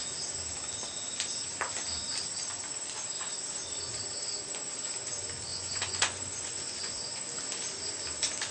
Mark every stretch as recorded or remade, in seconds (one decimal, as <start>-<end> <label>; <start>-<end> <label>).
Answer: 0.0-5.5 recorded; 5.5-7.2 remade; 7.2-8.5 recorded